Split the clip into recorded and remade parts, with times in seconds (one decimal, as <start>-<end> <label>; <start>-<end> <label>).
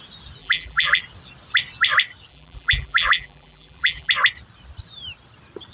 0.0-0.4 recorded; 0.4-1.0 remade; 1.0-2.3 recorded; 2.3-4.1 remade; 4.1-5.7 recorded